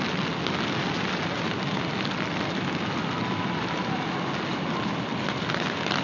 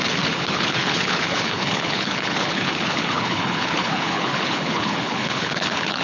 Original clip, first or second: first